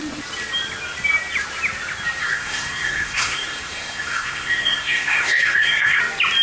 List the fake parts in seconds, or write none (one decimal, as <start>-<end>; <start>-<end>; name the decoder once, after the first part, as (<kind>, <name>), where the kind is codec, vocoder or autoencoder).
2.2-6.0 (codec, SNAC)